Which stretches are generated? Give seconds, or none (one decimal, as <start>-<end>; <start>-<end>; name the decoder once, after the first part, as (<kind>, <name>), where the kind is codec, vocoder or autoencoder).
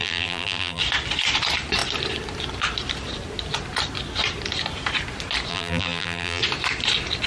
0.0-0.8 (vocoder, BigVGAN v2); 5.5-6.4